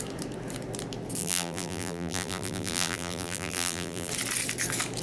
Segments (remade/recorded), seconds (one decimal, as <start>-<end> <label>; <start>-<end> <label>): 0.0-1.2 recorded; 1.2-4.1 remade; 4.1-5.0 recorded